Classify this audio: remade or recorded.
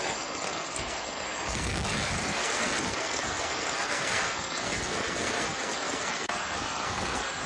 remade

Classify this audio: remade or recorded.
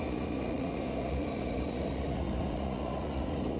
remade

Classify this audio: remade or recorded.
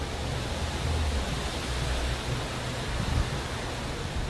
recorded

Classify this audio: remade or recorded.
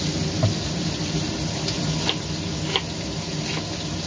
recorded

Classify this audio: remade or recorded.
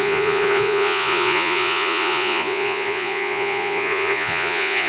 remade